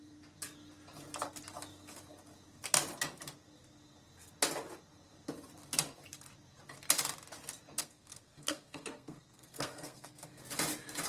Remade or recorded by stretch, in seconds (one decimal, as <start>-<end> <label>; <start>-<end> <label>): 0.0-7.8 recorded; 7.8-10.4 remade; 10.4-11.1 recorded